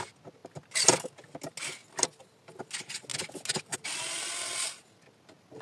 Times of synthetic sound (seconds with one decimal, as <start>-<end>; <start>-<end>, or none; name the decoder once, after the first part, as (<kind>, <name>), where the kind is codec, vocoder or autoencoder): none